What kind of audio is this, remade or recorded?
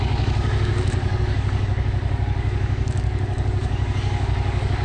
remade